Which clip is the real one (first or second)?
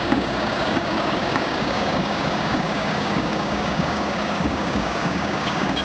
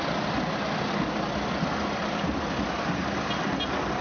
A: second